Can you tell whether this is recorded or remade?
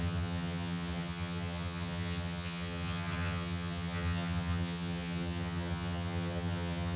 remade